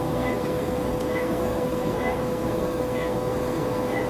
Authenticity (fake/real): fake